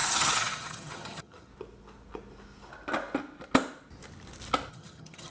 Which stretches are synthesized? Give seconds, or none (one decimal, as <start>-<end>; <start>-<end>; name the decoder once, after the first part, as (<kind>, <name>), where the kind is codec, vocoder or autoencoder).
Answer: 0.0-1.5 (vocoder, HiFi-GAN); 4.7-5.3